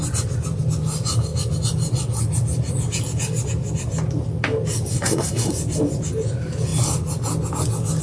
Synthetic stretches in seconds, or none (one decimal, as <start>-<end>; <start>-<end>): 4.9-5.5